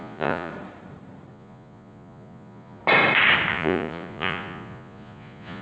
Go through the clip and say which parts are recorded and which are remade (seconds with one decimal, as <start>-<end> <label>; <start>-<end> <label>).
0.0-0.5 remade; 0.5-1.3 recorded; 1.3-2.8 remade; 2.8-3.5 recorded; 3.5-5.6 remade

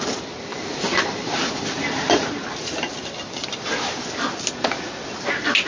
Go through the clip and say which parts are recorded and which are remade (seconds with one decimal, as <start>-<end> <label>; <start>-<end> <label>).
0.0-0.5 recorded; 0.5-3.9 remade; 3.9-5.7 recorded

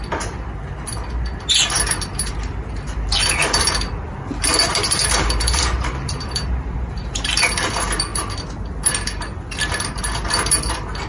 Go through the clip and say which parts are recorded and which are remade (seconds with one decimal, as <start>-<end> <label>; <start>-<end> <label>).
0.0-4.7 recorded; 4.7-7.3 remade; 7.3-11.1 recorded

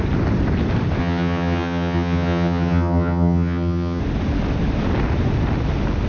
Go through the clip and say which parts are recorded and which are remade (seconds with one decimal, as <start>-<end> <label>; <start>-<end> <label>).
0.0-1.0 recorded; 1.0-4.0 remade; 4.0-6.1 recorded